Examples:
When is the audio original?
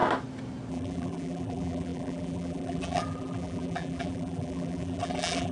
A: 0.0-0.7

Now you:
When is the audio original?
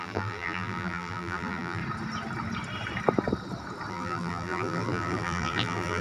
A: 1.8-3.9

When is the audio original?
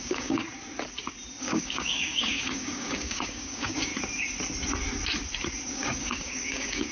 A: 0.4-1.4; 3.9-5.7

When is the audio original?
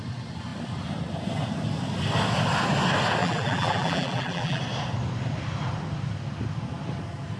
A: 0.0-3.2; 4.6-7.4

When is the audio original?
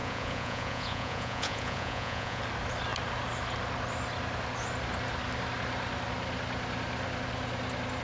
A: 2.4-8.0